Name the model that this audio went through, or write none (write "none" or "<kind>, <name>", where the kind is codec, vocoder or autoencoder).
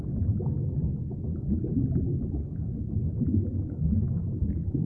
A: none